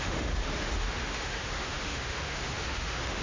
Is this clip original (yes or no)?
no